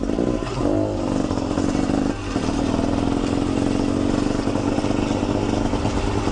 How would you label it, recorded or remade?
recorded